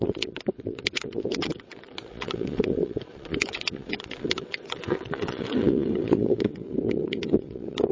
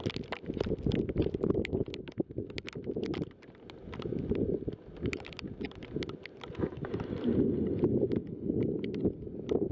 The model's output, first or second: first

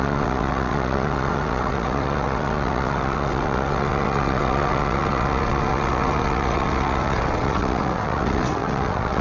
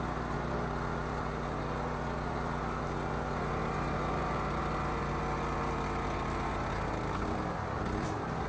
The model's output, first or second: first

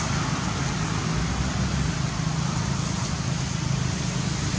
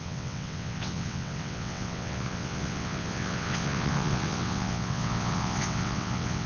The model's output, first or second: second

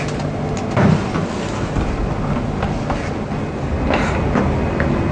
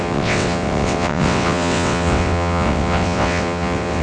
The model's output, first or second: second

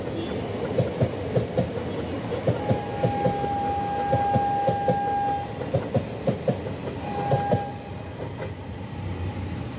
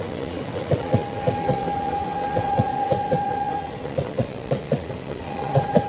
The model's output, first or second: second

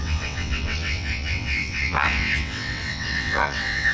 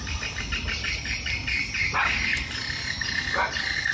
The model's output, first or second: first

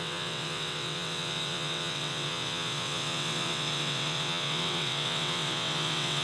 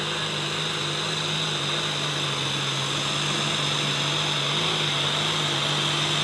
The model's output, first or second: first